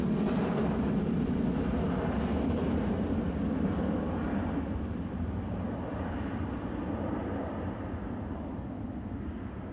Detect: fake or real real